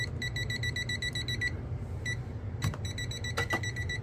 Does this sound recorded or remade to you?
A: recorded